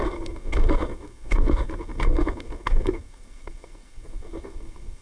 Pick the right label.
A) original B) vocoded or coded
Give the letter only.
B